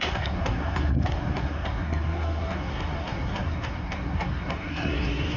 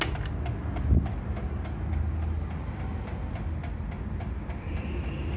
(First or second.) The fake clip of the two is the first